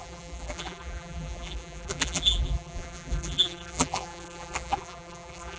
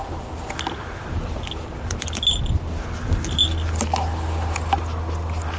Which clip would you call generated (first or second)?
first